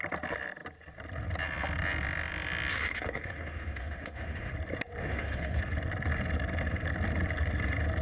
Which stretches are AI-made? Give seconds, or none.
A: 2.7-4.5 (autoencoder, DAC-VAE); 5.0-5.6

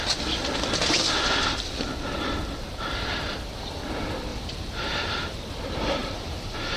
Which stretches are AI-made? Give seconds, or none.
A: 4.3-5.4 (vocoder, BigVGAN v2); 6.0-6.8